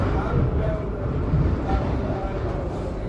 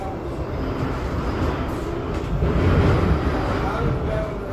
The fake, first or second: first